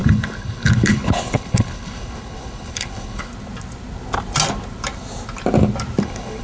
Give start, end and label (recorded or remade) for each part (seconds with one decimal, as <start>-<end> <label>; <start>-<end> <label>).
0.0-3.3 remade; 3.3-6.0 recorded; 6.0-6.4 remade